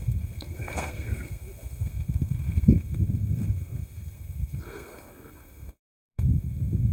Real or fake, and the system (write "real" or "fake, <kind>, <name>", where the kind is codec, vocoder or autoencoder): fake, codec, SNAC